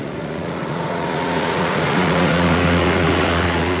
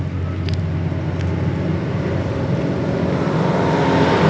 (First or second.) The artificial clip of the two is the first